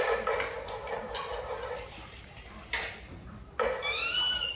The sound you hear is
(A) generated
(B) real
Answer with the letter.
A